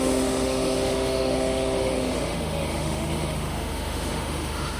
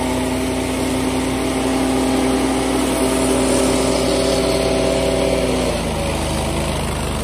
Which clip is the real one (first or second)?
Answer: second